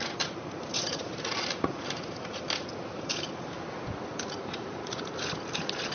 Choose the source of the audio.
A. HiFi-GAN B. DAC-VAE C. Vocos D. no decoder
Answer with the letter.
D